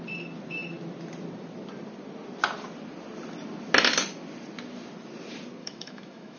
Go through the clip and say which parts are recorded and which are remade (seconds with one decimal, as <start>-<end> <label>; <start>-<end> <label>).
0.0-5.6 recorded; 5.6-6.4 remade